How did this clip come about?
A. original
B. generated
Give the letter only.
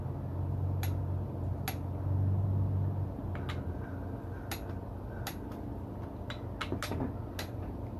A